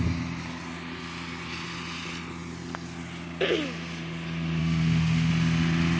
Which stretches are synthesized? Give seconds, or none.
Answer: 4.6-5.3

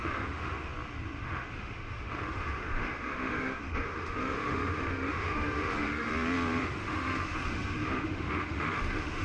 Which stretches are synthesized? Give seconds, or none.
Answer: 0.0-0.7; 1.2-6.1; 6.6-9.2

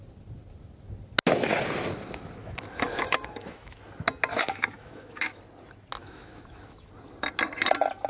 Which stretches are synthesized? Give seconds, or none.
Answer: 2.4-3.8; 4.3-5.4; 6.0-6.9

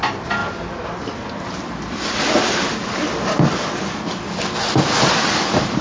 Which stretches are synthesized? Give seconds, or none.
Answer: none

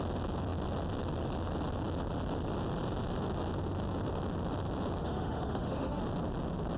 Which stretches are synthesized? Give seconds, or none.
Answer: 5.0-6.0

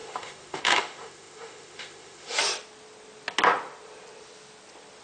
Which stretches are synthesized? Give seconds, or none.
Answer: 0.0-2.4